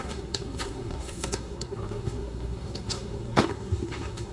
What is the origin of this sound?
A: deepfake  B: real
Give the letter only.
A